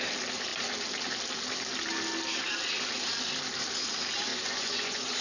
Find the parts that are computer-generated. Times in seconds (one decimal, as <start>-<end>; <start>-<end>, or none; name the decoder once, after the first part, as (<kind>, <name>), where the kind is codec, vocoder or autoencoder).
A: 4.3-5.2 (vocoder, Vocos)